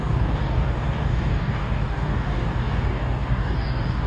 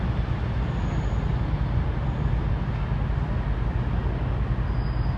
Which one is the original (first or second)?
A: second